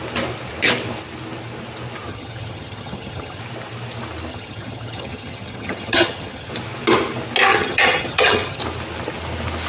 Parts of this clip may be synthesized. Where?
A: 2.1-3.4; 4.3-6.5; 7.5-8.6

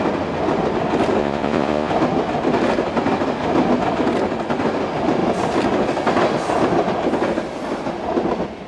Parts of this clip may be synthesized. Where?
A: 1.2-1.9

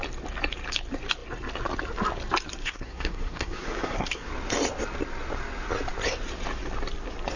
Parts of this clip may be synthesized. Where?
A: 2.6-4.3

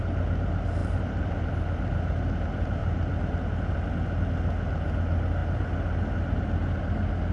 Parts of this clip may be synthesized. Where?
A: 0.8-1.5

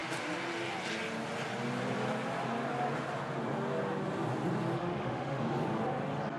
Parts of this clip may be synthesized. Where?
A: 4.8-5.4

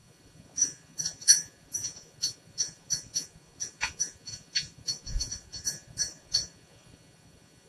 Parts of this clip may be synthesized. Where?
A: 0.0-7.7

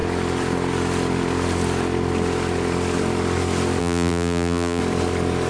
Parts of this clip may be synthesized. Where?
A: 3.8-4.8

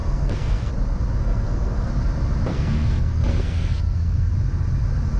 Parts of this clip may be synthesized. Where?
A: 0.0-0.7; 1.2-1.9; 2.5-4.3